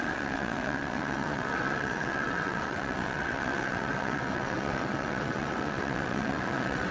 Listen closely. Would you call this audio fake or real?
fake